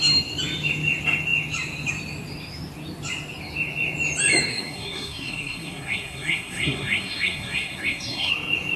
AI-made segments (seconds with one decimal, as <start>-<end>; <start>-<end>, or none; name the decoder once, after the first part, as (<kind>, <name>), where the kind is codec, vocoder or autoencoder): 4.5-8.3 (codec, SNAC)